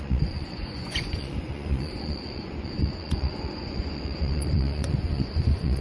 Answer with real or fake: fake